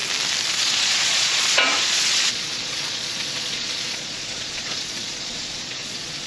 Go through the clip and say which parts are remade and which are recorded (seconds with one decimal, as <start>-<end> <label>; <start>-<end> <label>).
0.0-0.5 recorded; 0.5-6.3 remade